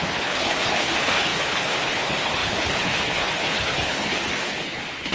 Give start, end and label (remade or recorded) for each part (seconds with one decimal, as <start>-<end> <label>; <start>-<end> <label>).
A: 0.0-5.1 remade